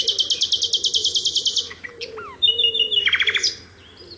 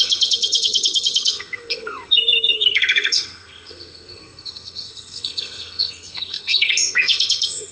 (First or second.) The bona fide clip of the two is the first